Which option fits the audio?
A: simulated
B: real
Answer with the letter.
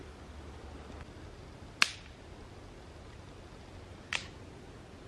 B